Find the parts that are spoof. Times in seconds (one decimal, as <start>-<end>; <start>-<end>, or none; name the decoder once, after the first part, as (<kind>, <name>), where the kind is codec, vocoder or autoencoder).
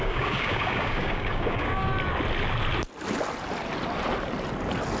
0.0-1.9 (codec, DAC)